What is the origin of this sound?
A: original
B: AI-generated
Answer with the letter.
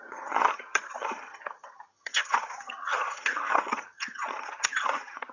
B